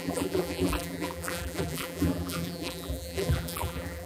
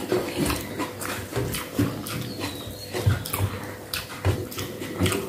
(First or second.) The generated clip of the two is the first